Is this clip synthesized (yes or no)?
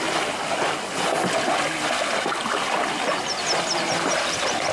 no